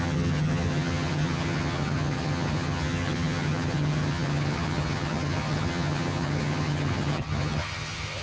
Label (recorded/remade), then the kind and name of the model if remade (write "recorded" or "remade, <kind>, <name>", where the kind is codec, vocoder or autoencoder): remade, vocoder, HiFi-GAN